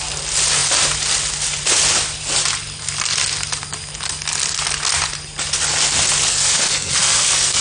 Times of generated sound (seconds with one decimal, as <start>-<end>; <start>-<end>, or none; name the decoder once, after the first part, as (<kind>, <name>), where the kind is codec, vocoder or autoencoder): 6.3-7.6 (codec, SNAC)